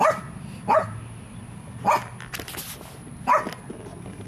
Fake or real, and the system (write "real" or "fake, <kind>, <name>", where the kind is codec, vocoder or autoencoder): real